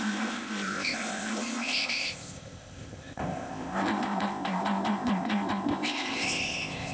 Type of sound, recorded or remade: remade